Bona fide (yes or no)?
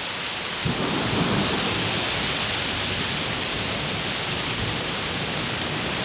yes